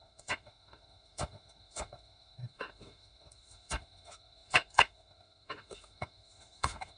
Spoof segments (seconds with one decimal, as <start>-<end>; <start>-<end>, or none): 0.0-7.0